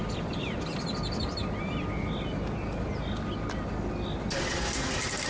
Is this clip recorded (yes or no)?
yes